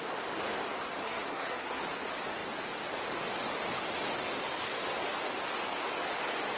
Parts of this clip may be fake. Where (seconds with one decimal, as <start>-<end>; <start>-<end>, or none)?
1.0-1.8